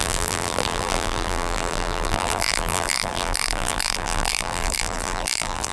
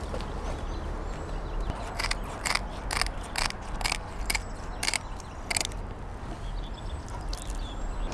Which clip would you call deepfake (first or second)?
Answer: first